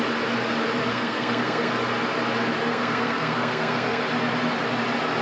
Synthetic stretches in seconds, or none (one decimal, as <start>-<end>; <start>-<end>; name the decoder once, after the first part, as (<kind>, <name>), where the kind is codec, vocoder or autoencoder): 0.9-1.7 (codec, SNAC); 2.7-4.0